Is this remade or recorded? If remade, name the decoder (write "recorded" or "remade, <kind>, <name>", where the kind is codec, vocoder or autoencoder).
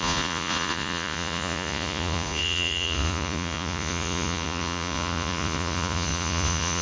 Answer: remade, vocoder, Vocos